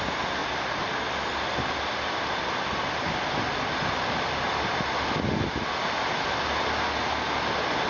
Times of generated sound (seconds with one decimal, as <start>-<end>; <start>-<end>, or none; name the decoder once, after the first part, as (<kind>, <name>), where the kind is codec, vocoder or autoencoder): 0.4-1.0 (vocoder, BigVGAN v2)